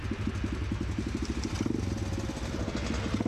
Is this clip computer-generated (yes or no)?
no